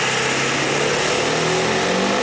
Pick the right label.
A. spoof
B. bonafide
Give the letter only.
B